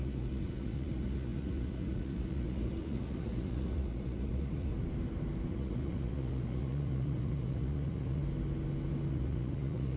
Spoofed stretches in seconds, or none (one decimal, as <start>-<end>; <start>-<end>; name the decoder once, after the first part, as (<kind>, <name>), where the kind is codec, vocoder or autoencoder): 0.0-4.7 (vocoder, Vocos); 5.5-8.2; 9.1-10.0